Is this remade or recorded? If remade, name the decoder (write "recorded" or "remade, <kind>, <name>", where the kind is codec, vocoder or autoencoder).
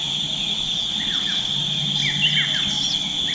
recorded